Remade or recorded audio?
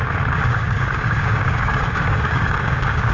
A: remade